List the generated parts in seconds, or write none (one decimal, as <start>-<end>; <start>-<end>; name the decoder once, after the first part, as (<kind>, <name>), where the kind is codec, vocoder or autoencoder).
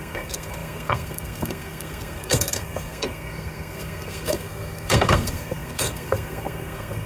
0.0-7.1 (codec, SNAC)